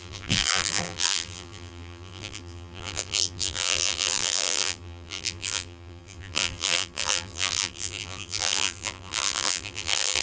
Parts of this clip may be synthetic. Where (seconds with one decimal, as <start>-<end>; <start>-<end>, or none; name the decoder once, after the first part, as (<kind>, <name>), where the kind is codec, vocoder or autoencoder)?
0.0-10.2 (vocoder, BigVGAN v2)